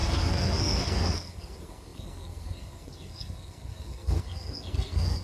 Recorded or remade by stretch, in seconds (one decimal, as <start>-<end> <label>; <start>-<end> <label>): 0.0-5.2 remade